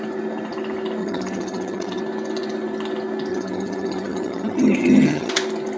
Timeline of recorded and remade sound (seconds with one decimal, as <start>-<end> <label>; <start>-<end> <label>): 0.0-1.0 recorded; 1.0-2.0 remade; 2.0-3.3 recorded; 3.3-5.3 remade; 5.3-5.8 recorded